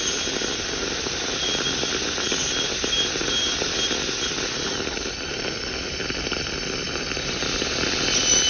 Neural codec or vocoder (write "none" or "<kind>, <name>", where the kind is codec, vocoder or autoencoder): vocoder, BigVGAN v2